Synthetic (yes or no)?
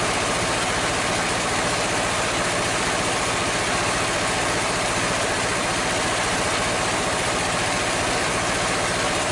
no